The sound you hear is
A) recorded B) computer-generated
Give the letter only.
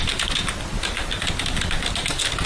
A